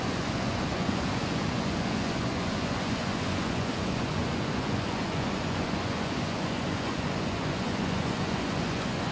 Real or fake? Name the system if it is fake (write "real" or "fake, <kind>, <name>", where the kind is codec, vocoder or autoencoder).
fake, vocoder, Vocos